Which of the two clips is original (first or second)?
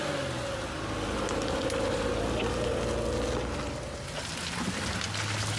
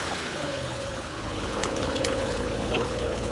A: first